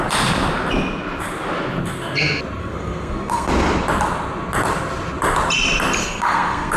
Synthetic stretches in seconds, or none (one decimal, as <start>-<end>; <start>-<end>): 2.6-3.5; 6.0-6.8